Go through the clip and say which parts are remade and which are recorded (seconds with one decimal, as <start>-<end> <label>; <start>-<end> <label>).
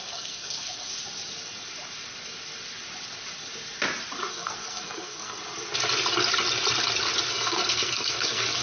0.0-0.9 remade; 0.9-4.3 recorded; 4.3-5.4 remade; 5.4-7.3 recorded; 7.3-8.6 remade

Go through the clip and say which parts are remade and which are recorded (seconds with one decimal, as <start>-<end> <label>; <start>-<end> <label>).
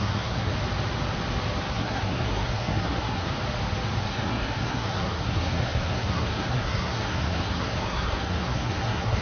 0.0-0.5 remade; 0.5-1.7 recorded; 1.7-3.3 remade; 3.3-4.0 recorded; 4.0-9.2 remade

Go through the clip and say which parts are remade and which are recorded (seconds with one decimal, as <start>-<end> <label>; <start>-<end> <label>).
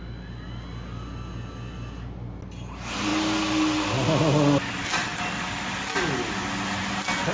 0.0-7.3 recorded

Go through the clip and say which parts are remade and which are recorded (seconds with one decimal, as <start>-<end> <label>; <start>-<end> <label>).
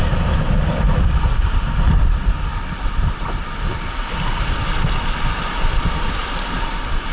0.0-7.1 recorded